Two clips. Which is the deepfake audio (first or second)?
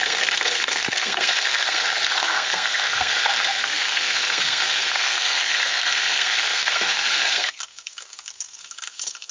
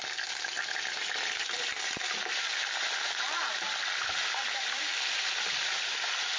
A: first